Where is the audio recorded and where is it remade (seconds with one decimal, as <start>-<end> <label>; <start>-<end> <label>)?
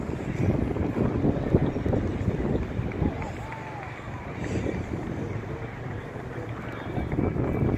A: 0.0-7.8 recorded